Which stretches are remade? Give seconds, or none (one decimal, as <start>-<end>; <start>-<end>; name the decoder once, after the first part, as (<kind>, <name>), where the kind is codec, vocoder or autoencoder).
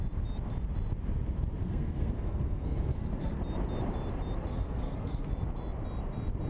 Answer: 1.6-3.4 (codec, SNAC); 4.5-5.3